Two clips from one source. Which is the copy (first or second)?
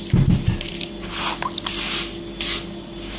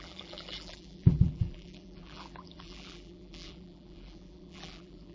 second